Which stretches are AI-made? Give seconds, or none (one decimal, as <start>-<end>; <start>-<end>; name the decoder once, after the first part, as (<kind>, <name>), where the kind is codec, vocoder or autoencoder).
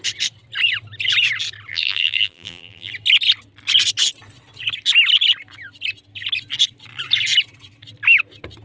1.7-2.9 (vocoder, BigVGAN v2)